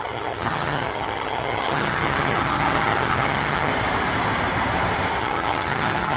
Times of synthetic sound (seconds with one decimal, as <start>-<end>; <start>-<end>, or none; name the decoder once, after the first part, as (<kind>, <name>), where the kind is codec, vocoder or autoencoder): 0.0-3.7 (vocoder, HiFi-GAN); 5.2-6.2